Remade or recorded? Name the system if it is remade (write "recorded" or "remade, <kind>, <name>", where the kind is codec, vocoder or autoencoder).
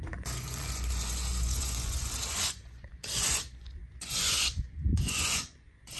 remade, vocoder, Vocos